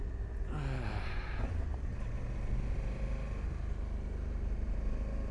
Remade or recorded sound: recorded